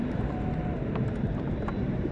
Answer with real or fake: fake